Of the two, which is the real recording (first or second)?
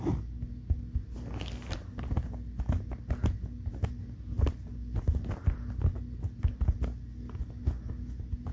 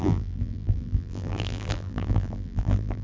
first